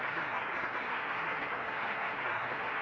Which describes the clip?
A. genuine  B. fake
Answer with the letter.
B